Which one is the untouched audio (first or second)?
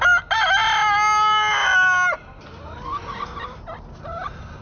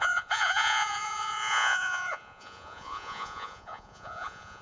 first